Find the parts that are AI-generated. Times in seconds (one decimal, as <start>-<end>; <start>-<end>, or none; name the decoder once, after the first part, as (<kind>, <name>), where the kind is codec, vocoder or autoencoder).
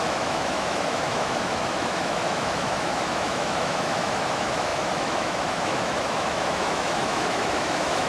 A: 0.0-8.1 (autoencoder, DAC-VAE)